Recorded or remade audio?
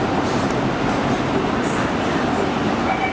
recorded